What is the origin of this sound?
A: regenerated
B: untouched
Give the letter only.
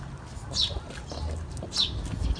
B